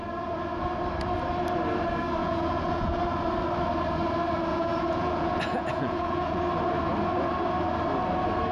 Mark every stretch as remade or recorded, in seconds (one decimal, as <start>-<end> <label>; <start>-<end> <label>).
0.0-2.2 recorded; 2.2-3.0 remade; 3.0-4.5 recorded; 4.5-6.4 remade; 6.4-8.5 recorded